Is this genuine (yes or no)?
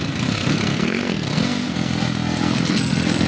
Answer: no